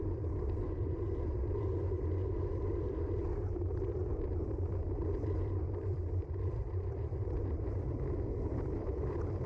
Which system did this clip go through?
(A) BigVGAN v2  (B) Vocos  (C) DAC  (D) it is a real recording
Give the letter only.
A